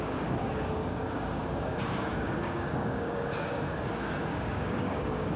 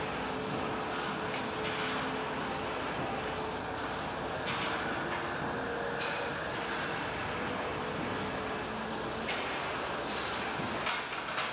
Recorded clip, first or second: second